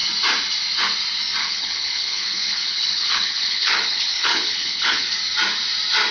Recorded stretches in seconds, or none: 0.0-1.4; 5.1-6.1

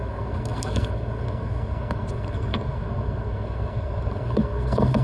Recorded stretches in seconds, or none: none

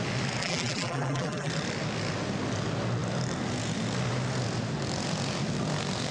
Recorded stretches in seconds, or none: 0.0-0.4; 1.5-6.1

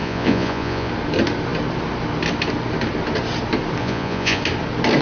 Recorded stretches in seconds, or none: 0.9-3.8; 4.4-5.0

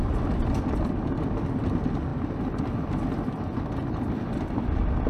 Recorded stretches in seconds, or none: 0.0-5.1